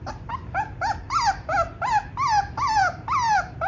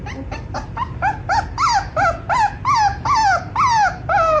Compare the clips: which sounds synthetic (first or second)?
first